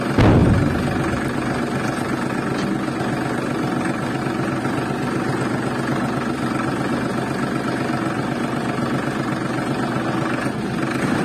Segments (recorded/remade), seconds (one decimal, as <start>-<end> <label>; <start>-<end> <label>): 0.0-11.2 recorded